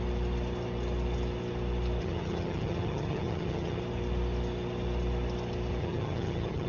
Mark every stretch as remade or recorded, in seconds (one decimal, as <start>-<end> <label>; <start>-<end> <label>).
0.0-2.0 recorded; 2.0-3.8 remade; 3.8-5.8 recorded; 5.8-6.7 remade